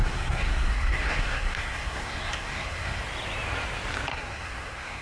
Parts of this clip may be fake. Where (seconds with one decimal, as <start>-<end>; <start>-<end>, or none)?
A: 0.0-3.0; 4.1-5.0